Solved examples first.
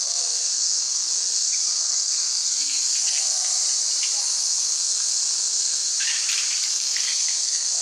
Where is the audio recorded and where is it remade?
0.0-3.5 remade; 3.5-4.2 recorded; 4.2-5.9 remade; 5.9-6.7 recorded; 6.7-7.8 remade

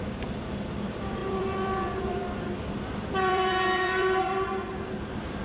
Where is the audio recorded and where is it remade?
0.0-5.4 remade